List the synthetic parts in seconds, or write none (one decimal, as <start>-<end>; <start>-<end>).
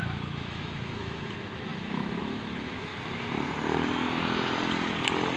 0.0-2.9